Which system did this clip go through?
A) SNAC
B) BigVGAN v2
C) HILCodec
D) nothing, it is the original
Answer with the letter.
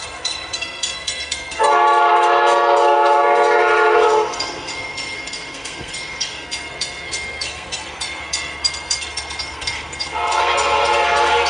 A